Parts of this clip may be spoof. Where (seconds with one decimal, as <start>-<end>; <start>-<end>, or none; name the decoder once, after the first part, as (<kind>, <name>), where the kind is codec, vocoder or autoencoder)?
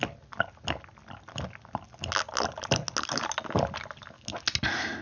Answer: none